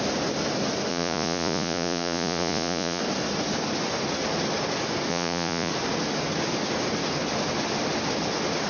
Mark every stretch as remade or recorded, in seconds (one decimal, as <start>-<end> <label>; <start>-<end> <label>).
0.0-0.9 recorded; 0.9-3.0 remade; 3.0-5.1 recorded; 5.1-5.7 remade; 5.7-8.7 recorded